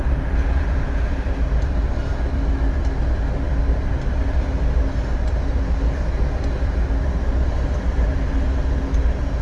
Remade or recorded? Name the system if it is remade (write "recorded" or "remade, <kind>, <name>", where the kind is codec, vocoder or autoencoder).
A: recorded